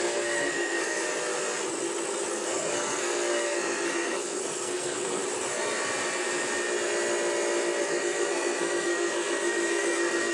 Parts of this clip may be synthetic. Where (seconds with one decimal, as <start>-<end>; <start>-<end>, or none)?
0.0-1.1; 2.3-5.2; 7.8-10.3